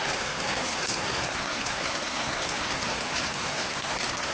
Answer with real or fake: fake